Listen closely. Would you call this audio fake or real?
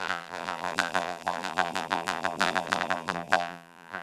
fake